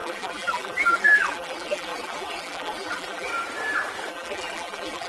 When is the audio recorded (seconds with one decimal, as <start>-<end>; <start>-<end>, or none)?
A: 3.3-4.1

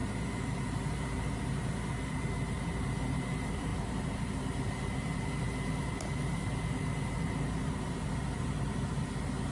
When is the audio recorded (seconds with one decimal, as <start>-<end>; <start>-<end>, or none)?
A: none

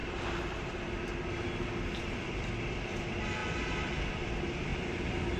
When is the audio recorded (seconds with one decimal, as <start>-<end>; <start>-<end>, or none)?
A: 0.0-2.0

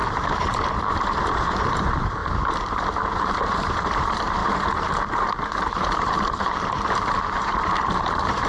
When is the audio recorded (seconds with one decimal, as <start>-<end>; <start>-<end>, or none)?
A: 0.0-0.9

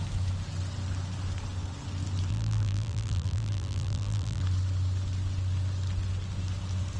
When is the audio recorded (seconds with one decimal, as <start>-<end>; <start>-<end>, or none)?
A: 0.0-2.3; 4.4-7.0

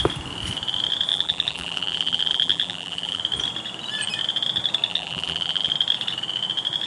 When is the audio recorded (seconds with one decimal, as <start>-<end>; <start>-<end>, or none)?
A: 0.0-1.1; 3.2-4.9; 5.7-6.9